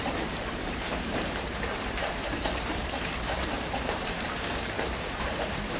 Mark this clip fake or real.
fake